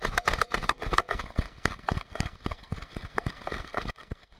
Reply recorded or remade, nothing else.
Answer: remade